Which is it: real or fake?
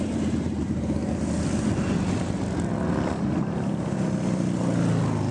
real